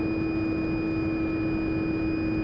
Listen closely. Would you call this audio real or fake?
real